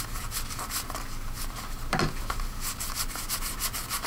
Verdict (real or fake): real